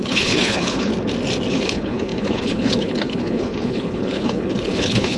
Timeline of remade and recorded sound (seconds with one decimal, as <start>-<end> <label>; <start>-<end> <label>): 0.0-0.9 remade; 0.9-1.5 recorded; 1.5-5.2 remade

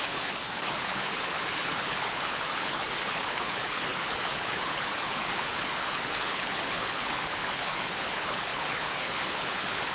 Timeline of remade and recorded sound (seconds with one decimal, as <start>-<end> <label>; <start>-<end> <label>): 0.0-9.9 remade

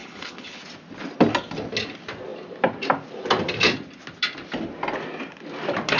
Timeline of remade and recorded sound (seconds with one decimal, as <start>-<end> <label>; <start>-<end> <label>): 0.0-0.6 remade; 0.6-6.0 recorded

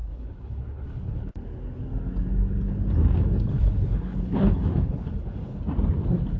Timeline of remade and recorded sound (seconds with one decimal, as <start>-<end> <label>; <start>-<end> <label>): 0.0-1.3 remade; 1.3-3.5 recorded; 3.5-5.6 remade; 5.6-6.4 recorded

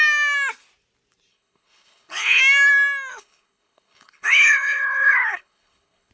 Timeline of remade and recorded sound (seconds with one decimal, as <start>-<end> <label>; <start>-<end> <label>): 0.0-1.3 recorded; 1.3-2.4 remade; 2.4-3.1 recorded; 3.1-6.1 remade